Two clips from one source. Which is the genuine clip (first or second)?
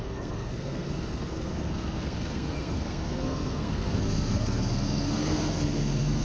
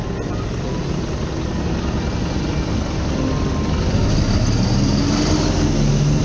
second